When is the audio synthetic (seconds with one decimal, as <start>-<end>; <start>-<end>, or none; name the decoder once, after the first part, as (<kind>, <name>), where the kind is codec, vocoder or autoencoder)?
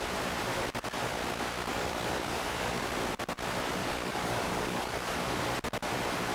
1.7-2.8 (codec, DAC); 3.8-5.4